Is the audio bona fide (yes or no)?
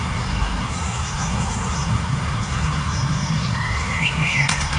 no